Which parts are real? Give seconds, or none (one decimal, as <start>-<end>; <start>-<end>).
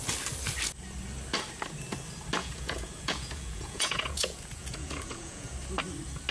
0.0-2.4; 5.5-6.3